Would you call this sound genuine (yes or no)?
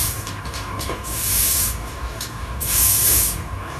no